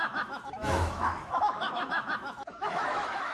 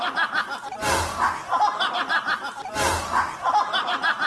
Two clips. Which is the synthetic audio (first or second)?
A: first